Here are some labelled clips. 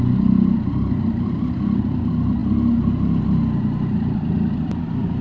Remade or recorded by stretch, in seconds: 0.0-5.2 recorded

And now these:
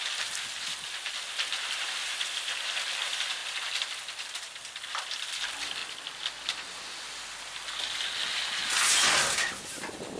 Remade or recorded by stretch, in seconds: 0.0-3.4 remade; 3.4-4.3 recorded; 4.3-5.8 remade; 5.8-10.2 recorded

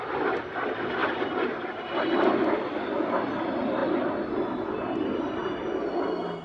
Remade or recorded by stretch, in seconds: 0.0-6.4 recorded